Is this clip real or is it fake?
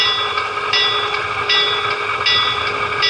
real